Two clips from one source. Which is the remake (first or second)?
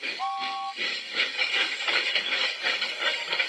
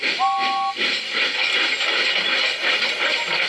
first